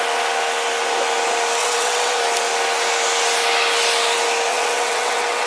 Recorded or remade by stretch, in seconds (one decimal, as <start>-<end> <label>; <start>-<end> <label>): 0.0-1.6 recorded; 1.6-2.2 remade; 2.2-4.5 recorded; 4.5-5.5 remade